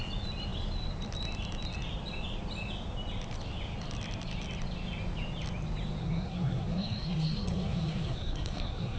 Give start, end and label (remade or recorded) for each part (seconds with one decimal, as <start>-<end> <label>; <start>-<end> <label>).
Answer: 0.0-6.0 recorded; 6.0-9.0 remade